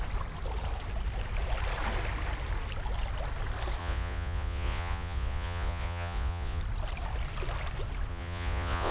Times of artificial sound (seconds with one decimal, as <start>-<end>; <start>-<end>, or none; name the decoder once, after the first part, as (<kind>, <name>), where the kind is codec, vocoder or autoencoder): 3.8-6.6 (vocoder, Vocos); 8.1-8.9